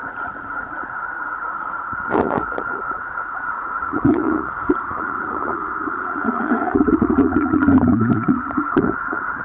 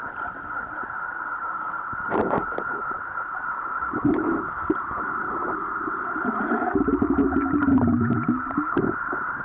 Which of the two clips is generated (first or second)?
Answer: first